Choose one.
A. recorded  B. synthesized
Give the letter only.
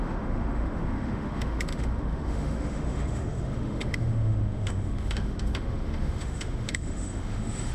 B